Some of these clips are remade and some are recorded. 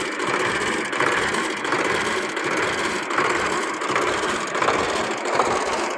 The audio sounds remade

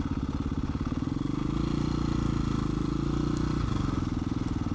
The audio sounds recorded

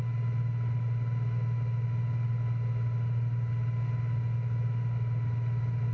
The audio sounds recorded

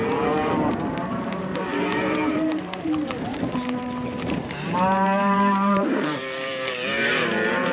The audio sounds remade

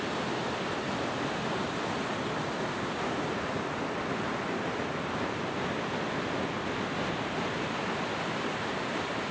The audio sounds recorded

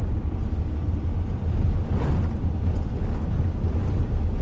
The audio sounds recorded